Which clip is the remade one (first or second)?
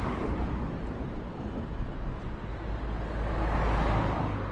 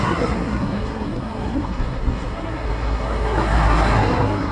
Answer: second